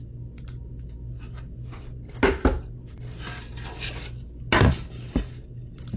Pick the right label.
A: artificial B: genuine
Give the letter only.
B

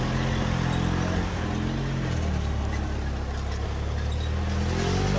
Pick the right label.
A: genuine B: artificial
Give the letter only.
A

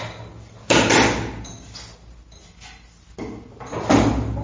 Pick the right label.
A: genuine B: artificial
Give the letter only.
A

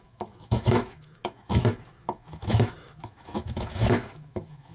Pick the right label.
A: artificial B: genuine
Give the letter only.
A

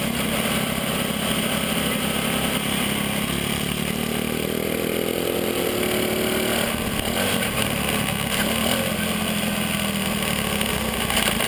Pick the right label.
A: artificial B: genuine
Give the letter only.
B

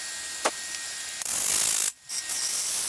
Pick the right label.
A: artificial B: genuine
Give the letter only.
B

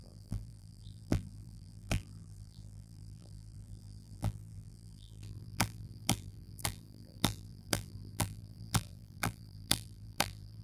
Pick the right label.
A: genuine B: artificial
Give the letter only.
B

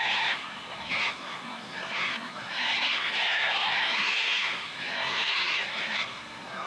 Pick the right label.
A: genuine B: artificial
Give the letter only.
B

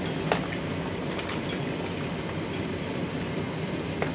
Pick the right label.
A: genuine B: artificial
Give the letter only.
A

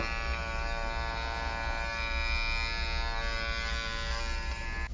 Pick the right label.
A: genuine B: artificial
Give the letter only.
A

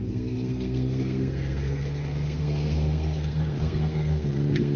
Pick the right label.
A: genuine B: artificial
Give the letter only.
B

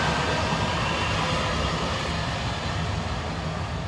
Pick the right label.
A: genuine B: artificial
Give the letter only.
A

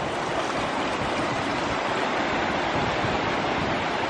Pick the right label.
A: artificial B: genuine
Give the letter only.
B